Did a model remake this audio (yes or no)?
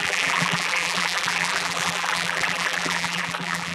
yes